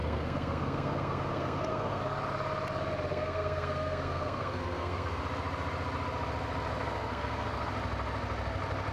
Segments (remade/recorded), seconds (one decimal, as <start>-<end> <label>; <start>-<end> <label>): 0.0-2.0 remade; 2.0-3.1 recorded; 3.1-5.2 remade; 5.2-6.8 recorded; 6.8-7.7 remade; 7.7-8.9 recorded